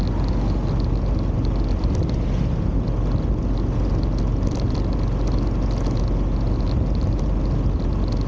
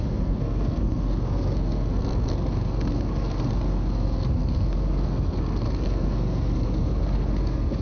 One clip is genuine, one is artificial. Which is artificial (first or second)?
second